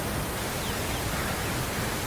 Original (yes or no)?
yes